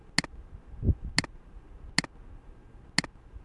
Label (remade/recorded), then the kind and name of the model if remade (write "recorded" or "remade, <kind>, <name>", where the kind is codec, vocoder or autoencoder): recorded